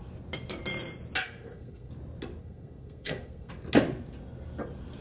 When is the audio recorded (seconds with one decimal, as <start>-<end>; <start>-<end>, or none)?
0.0-1.2; 1.9-2.4; 3.5-5.0